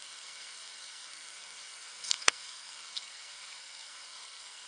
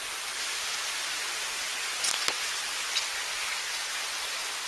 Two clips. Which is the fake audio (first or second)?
first